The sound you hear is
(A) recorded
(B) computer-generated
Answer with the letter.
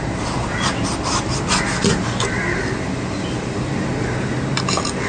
A